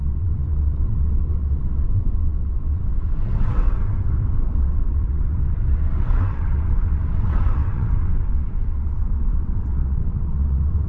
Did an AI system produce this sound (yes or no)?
yes